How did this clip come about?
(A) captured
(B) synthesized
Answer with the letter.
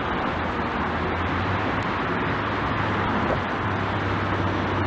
A